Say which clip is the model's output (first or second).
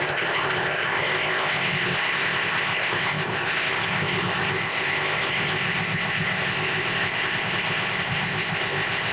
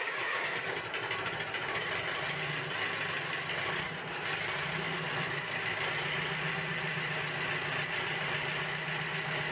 first